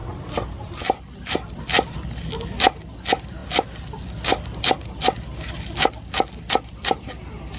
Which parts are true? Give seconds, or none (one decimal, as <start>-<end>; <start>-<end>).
0.0-7.6